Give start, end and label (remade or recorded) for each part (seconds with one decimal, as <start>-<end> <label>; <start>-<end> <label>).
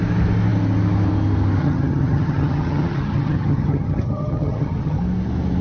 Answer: 0.0-1.6 recorded; 1.6-5.0 remade; 5.0-5.6 recorded